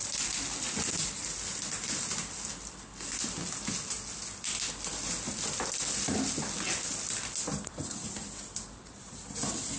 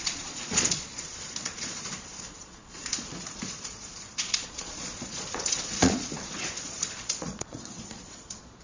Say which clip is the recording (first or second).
first